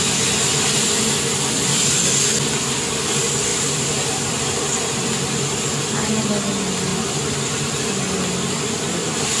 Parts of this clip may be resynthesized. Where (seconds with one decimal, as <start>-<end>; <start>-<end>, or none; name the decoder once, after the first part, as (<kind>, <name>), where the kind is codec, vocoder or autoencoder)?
3.5-4.7 (vocoder, BigVGAN v2); 6.9-7.6

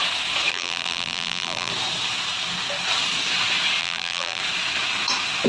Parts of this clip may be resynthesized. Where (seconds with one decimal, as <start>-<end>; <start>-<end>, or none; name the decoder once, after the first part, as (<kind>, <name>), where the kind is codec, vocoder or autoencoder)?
0.5-1.7 (vocoder, BigVGAN v2); 3.8-4.4

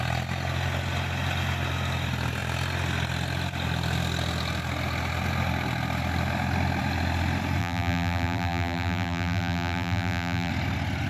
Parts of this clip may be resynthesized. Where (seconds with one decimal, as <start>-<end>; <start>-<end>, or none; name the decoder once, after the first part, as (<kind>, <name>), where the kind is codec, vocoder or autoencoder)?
7.6-10.5 (vocoder, BigVGAN v2)

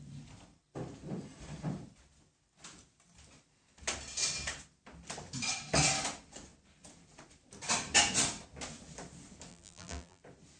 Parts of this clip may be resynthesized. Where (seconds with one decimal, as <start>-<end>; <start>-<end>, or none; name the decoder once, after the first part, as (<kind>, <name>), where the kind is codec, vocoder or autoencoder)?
9.5-10.2 (vocoder, BigVGAN v2)

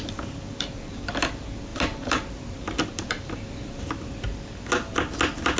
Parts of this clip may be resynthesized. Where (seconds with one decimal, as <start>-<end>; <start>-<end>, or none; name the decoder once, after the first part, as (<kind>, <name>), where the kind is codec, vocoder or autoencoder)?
0.4-1.1 (vocoder, BigVGAN v2); 1.7-3.8

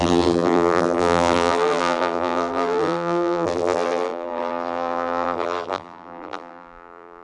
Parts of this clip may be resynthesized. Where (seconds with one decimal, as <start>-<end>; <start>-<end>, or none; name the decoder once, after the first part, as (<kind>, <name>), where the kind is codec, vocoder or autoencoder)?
0.0-7.2 (vocoder, BigVGAN v2)